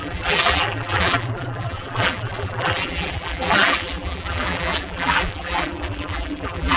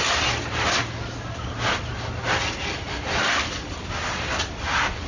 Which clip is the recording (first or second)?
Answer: second